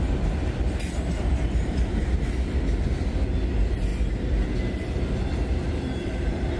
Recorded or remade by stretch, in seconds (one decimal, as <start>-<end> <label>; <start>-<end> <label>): 0.0-6.6 recorded